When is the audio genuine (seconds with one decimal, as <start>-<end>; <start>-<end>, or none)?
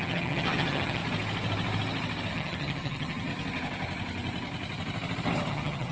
1.0-2.3; 3.3-5.5